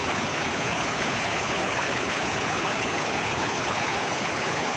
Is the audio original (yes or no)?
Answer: no